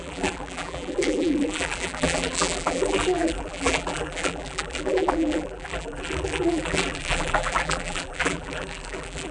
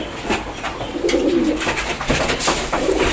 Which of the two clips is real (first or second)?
second